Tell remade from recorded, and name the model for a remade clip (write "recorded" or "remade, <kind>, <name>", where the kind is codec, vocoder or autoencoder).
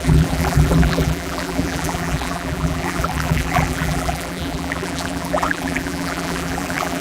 remade, vocoder, BigVGAN v2